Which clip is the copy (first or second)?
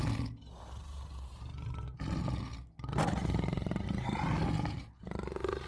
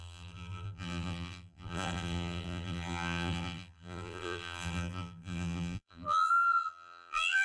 second